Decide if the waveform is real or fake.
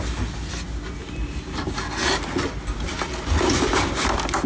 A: real